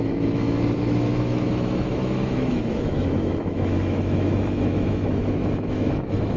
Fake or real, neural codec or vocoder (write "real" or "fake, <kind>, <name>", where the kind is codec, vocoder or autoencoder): fake, autoencoder, DAC-VAE